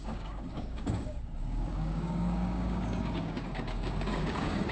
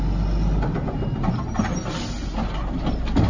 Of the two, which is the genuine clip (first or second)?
second